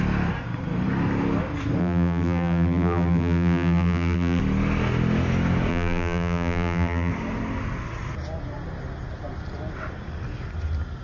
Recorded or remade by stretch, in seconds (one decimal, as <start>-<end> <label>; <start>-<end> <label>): 0.0-1.8 recorded; 1.8-4.4 remade; 4.4-5.7 recorded; 5.7-7.1 remade; 7.1-11.0 recorded